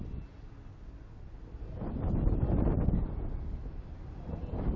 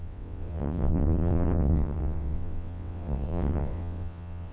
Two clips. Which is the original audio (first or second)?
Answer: first